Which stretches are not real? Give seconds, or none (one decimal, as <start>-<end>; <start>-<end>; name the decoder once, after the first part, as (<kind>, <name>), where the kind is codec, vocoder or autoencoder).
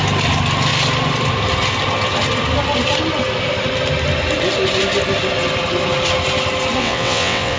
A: 6.8-7.6 (vocoder, WaveNeXt)